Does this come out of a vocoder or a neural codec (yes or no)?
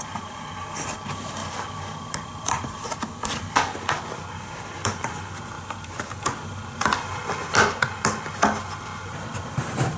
no